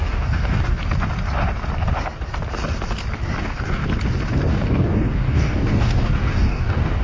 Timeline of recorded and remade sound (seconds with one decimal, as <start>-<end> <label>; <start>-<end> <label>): 0.0-0.8 remade; 0.8-3.4 recorded; 3.4-3.8 remade; 3.8-4.5 recorded; 4.5-7.0 remade